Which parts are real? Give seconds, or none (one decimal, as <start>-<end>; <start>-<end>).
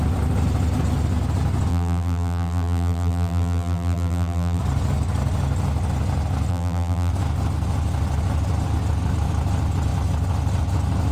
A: 0.0-1.7; 4.6-6.5; 7.1-11.1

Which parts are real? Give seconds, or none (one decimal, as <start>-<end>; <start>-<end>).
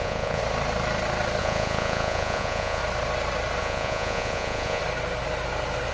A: 0.4-1.4; 2.8-3.6; 4.8-5.9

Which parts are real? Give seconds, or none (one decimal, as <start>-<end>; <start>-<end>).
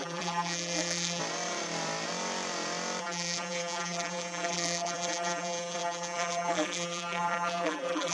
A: 1.2-3.0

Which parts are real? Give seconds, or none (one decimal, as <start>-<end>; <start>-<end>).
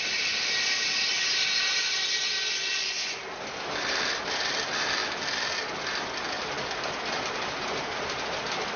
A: 0.0-2.7; 3.2-8.8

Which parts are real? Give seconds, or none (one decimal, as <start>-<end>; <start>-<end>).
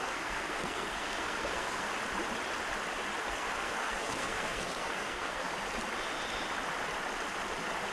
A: 1.9-3.2; 5.5-7.9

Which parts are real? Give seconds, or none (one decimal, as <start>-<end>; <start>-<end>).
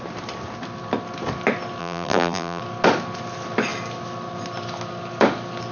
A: 0.0-1.8; 2.6-5.7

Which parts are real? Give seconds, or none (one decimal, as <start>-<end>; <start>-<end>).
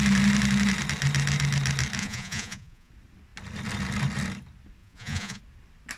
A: 0.0-2.0; 2.9-4.8; 5.4-6.0